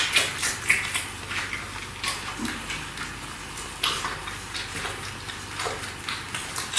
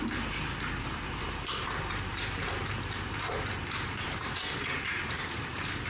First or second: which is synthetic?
second